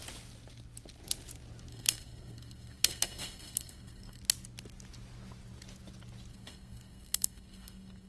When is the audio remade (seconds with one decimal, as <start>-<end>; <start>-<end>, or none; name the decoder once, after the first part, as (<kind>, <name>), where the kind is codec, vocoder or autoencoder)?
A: 1.7-4.2 (codec, SNAC); 6.3-8.1